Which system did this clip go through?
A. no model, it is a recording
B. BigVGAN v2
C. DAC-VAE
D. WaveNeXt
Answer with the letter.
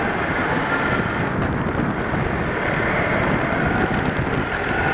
A